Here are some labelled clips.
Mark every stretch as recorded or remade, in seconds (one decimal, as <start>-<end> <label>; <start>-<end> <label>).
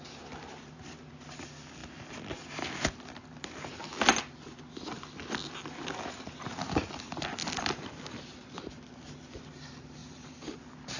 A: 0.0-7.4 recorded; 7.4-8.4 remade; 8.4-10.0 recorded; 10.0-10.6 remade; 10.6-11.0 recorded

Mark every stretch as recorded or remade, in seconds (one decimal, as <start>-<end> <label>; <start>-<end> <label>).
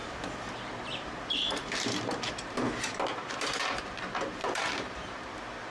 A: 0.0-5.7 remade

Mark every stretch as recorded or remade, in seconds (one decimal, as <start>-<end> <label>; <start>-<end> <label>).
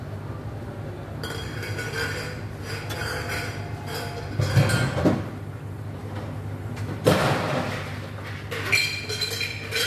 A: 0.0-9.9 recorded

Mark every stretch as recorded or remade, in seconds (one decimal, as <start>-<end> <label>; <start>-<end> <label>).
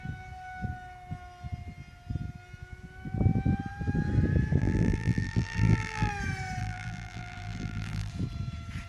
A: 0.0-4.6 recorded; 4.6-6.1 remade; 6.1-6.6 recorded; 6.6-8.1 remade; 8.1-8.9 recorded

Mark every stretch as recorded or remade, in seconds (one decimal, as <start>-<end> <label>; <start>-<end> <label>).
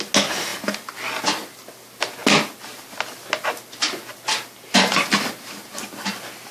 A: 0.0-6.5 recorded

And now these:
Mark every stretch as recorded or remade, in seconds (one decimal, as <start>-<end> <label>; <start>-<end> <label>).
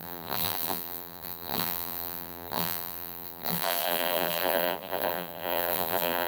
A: 0.0-6.3 remade